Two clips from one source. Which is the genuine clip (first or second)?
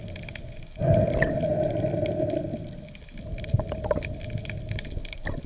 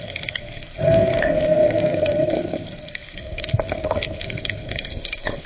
first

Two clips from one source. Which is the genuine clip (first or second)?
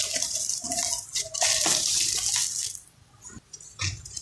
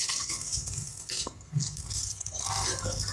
first